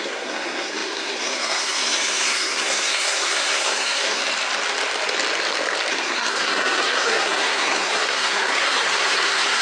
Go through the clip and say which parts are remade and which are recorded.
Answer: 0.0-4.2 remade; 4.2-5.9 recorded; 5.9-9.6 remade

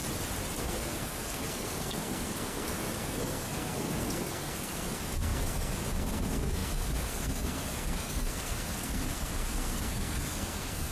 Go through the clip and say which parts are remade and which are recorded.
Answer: 0.0-0.6 recorded; 0.6-10.9 remade

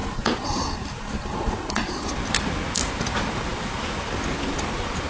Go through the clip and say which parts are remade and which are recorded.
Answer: 0.0-5.1 recorded